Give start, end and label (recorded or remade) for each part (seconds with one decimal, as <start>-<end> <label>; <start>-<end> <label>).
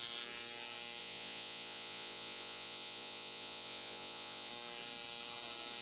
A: 0.0-1.0 recorded; 1.0-4.5 remade; 4.5-5.8 recorded